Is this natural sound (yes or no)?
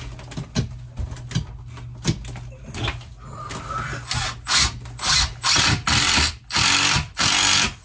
yes